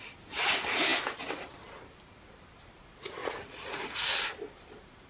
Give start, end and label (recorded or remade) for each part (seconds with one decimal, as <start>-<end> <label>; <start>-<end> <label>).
0.0-3.2 recorded; 3.2-4.1 remade; 4.1-5.1 recorded